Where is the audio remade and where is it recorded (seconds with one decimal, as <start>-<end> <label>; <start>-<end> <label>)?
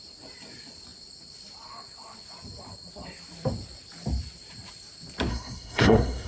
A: 0.0-5.3 recorded; 5.3-6.3 remade